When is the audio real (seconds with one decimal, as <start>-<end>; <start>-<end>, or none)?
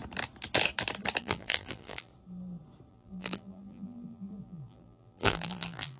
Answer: 0.0-1.2; 2.1-2.9